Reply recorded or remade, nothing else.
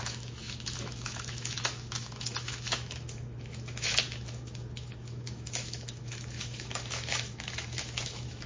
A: remade